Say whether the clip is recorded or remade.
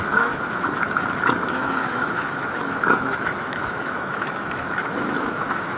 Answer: remade